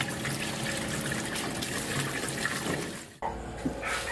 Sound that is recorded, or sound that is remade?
recorded